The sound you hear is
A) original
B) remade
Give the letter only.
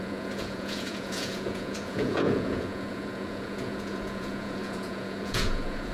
B